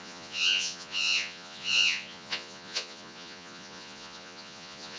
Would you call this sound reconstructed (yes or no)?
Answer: yes